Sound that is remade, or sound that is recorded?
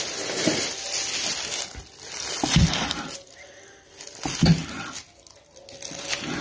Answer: recorded